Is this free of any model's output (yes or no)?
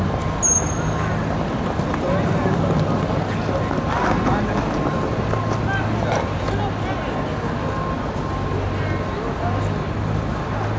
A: yes